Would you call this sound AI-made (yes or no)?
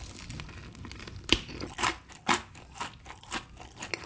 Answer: no